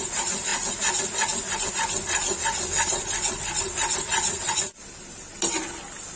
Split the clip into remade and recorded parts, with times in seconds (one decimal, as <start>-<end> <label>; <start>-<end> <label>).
0.0-0.5 remade; 0.5-1.7 recorded; 1.7-6.2 remade